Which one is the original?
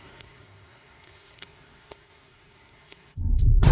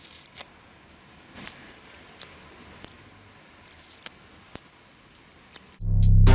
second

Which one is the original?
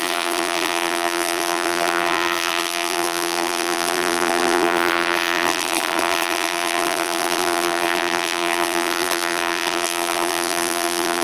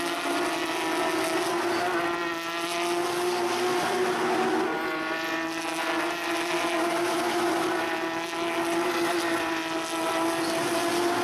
second